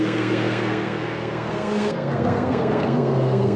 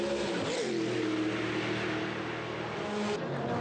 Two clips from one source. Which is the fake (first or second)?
first